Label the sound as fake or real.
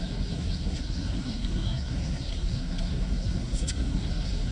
fake